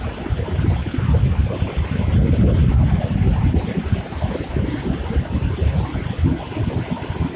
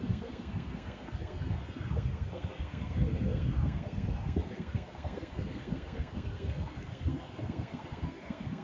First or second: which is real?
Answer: first